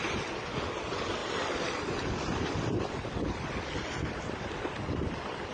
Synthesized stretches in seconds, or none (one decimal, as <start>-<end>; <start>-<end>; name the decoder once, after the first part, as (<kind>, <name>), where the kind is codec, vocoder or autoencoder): 1.2-3.9 (vocoder, BigVGAN v2)